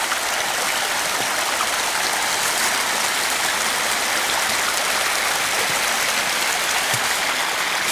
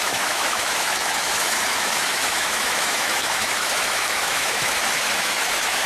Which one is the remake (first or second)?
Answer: second